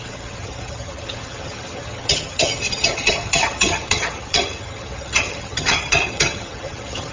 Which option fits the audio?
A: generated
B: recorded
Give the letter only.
A